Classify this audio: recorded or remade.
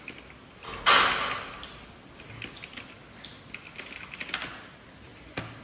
recorded